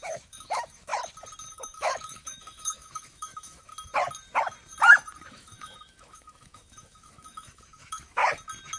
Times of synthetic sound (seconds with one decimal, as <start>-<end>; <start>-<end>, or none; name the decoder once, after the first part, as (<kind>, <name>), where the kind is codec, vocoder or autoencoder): 0.0-0.9 (autoencoder, DAC-VAE); 1.5-3.7; 5.3-8.2